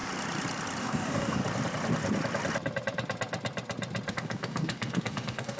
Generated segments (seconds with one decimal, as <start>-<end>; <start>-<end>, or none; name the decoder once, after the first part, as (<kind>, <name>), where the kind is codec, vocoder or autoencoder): 0.8-1.4 (codec, DAC); 4.1-5.6

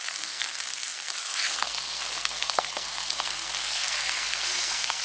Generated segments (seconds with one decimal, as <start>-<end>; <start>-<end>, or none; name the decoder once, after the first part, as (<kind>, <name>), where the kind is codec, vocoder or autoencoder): 0.0-5.0 (codec, SNAC)